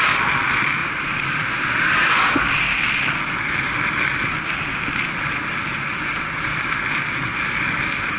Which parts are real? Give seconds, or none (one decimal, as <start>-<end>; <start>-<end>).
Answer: 0.0-8.2